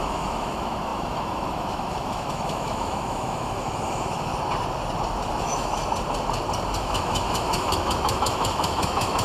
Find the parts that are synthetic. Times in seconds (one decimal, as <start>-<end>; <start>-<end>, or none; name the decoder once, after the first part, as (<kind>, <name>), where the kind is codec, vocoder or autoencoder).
0.0-4.3 (autoencoder, DAC-VAE); 5.3-5.8; 6.8-9.2